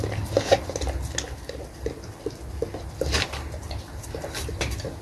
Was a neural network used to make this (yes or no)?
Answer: no